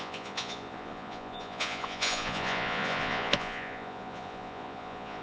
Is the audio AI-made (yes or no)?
yes